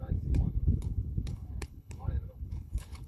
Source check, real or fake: fake